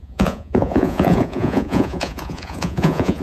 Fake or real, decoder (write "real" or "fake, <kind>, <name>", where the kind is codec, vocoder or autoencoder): fake, vocoder, Vocos